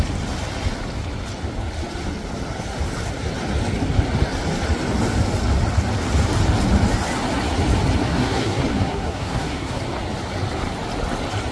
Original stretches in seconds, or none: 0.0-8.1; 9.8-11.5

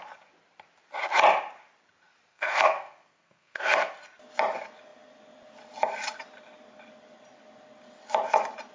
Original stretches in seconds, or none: 0.0-2.3; 3.6-8.7

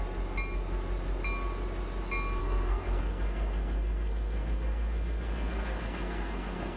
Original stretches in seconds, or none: 0.0-2.4